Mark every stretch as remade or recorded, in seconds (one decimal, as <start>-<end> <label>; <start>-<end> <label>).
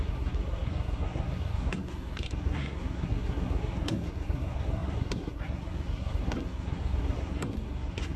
0.0-8.2 remade